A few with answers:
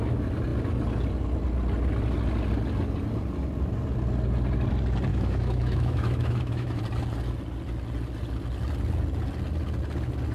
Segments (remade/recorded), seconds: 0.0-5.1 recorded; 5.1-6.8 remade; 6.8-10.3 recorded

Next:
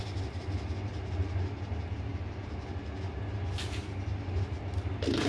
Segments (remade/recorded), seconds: 0.0-5.3 recorded

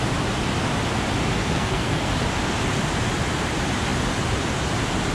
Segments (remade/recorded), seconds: 0.0-1.4 recorded; 1.4-2.1 remade; 2.1-5.1 recorded

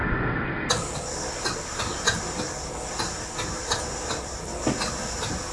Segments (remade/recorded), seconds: 0.0-5.5 recorded

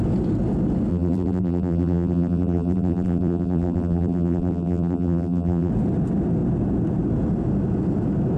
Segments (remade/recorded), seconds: 0.0-0.9 recorded; 0.9-5.7 remade; 5.7-8.4 recorded

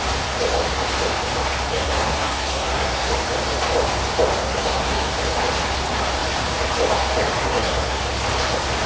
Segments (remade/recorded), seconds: 0.0-1.7 recorded; 1.7-3.1 remade; 3.1-4.4 recorded; 4.4-5.2 remade; 5.2-7.4 recorded; 7.4-8.0 remade; 8.0-8.9 recorded

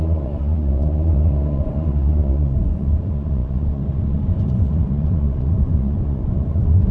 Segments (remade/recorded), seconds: 0.0-6.9 remade

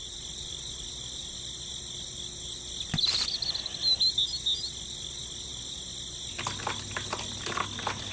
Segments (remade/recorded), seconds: 0.0-8.1 recorded